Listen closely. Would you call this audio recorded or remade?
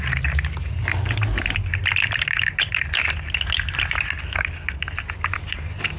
recorded